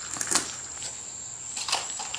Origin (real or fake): real